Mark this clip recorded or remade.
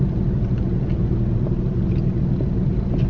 recorded